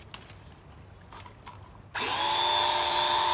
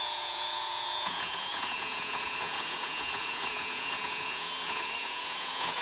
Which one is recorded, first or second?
first